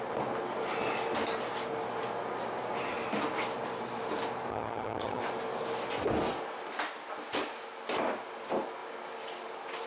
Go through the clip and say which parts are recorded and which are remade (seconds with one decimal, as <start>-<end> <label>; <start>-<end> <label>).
0.0-4.5 recorded; 4.5-5.2 remade; 5.2-9.9 recorded

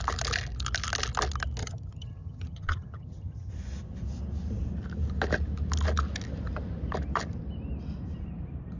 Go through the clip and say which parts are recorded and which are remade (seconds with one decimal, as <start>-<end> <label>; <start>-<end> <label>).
0.0-1.6 recorded; 1.6-3.5 remade; 3.5-8.8 recorded

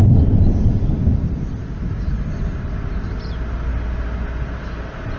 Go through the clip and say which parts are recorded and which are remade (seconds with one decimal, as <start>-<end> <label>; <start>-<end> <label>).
0.0-5.2 recorded

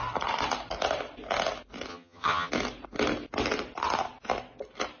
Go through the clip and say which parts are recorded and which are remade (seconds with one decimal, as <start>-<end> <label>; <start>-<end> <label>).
0.0-1.9 recorded; 1.9-2.5 remade; 2.5-5.0 recorded

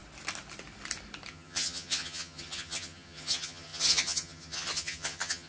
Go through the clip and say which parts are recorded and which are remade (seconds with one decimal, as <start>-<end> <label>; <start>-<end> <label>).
0.0-1.3 recorded; 1.3-5.5 remade

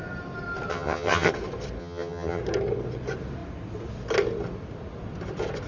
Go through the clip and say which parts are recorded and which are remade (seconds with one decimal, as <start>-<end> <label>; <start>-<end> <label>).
0.0-0.7 recorded; 0.7-1.3 remade; 1.3-1.8 recorded; 1.8-2.4 remade; 2.4-5.7 recorded

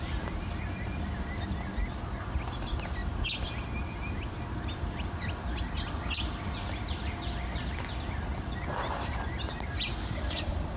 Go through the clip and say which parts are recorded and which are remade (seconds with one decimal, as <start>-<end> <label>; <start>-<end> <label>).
0.0-10.8 recorded